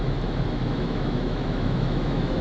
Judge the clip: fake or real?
fake